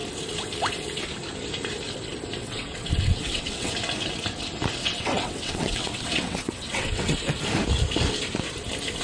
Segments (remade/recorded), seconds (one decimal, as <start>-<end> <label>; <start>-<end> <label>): 0.0-2.4 recorded; 2.4-3.7 remade; 3.7-4.8 recorded; 4.8-7.4 remade; 7.4-9.0 recorded